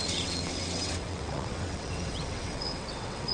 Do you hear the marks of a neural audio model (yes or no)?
yes